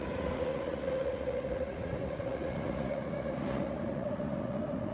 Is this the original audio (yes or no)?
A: no